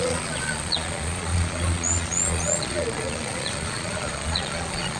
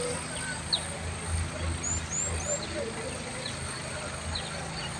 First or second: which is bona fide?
second